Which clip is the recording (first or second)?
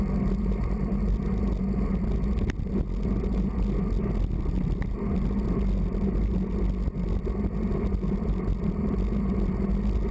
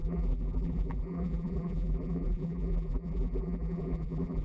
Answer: first